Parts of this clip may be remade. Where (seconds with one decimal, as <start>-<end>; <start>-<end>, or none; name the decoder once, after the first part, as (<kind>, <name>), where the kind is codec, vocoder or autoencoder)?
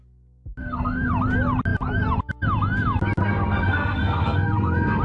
0.6-1.1 (codec, SNAC); 3.2-5.0